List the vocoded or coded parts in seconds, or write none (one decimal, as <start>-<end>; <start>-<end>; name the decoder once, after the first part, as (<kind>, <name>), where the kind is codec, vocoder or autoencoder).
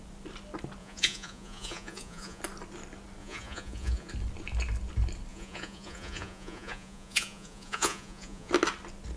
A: 0.8-2.4 (vocoder, Vocos); 3.2-4.1; 5.3-8.5